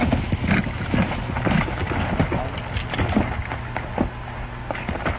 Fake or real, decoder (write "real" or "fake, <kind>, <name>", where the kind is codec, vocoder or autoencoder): real